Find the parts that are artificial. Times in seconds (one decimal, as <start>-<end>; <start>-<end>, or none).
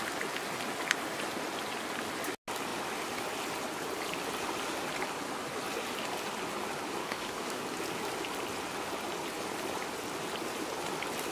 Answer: 7.0-7.6